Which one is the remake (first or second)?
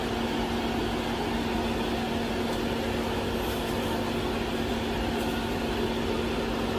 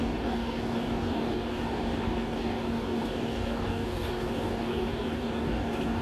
second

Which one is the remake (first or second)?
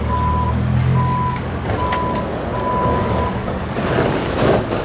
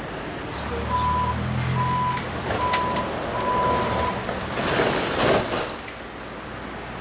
first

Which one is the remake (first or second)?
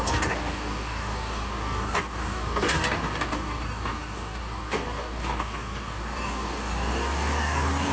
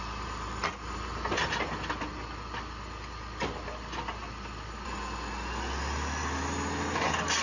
first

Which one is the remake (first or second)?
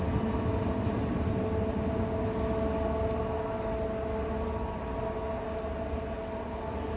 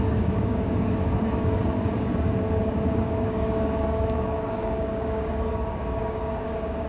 second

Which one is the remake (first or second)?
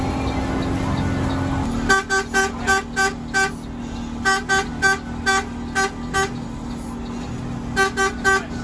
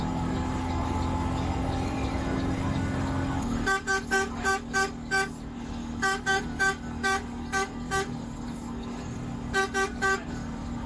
second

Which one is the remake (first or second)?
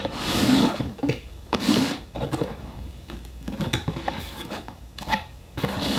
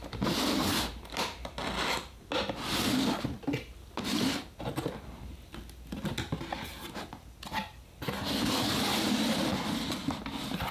first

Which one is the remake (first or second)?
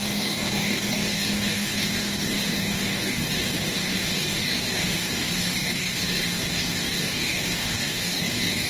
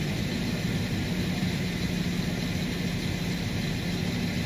first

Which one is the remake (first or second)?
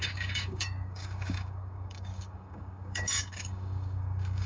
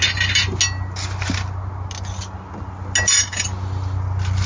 first